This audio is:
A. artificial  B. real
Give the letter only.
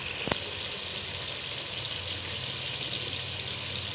B